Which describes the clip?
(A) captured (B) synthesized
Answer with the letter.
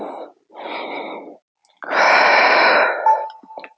A